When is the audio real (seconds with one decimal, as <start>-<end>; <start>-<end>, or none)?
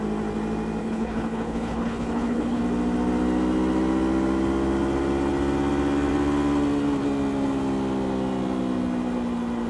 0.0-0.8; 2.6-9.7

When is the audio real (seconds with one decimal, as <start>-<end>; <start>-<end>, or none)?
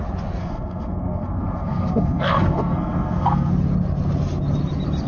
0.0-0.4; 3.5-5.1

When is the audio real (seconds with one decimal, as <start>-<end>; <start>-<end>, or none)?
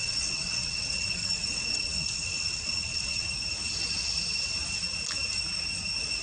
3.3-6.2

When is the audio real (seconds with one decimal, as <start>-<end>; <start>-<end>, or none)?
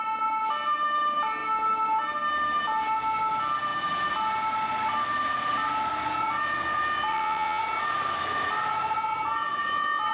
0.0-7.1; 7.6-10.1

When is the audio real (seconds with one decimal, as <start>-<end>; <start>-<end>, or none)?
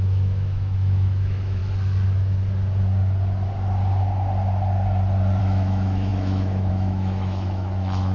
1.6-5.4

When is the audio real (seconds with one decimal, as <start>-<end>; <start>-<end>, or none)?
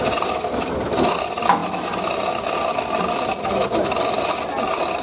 0.0-5.0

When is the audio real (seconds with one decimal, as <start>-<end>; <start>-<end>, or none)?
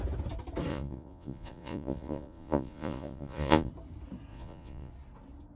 0.0-0.7; 3.7-4.3; 4.9-5.6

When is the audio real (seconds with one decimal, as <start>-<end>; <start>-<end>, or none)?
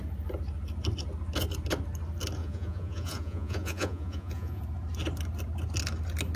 0.0-2.4; 4.6-6.4